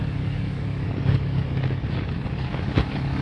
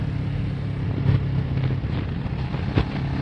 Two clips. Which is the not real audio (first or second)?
first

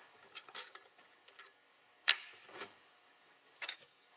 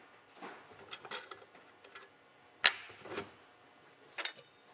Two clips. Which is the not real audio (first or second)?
first